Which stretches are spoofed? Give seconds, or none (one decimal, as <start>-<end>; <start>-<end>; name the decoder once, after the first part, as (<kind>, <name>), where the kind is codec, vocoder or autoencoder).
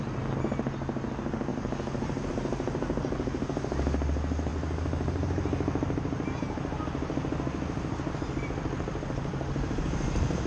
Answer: 1.5-2.3 (vocoder, BigVGAN v2); 9.3-10.5